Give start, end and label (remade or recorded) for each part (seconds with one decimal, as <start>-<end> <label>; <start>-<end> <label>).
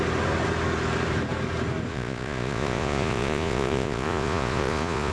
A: 0.0-1.9 recorded; 1.9-5.1 remade